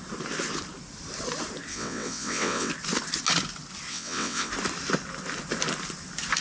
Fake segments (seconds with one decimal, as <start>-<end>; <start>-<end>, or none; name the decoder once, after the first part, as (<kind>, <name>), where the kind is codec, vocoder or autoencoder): 1.7-2.7 (vocoder, WaveNeXt); 3.9-4.5